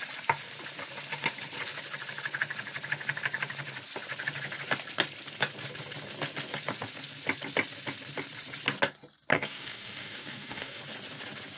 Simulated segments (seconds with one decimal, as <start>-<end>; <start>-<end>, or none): 9.3-10.8